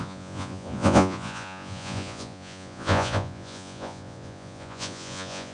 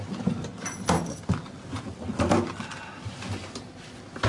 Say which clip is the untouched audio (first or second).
second